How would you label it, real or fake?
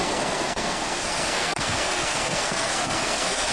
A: fake